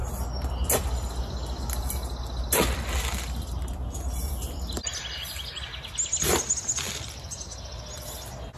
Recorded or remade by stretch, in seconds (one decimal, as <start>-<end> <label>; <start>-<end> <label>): 0.0-8.6 recorded